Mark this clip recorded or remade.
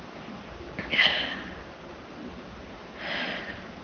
recorded